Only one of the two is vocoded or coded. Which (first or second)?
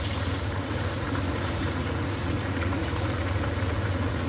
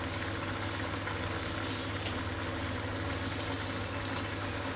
first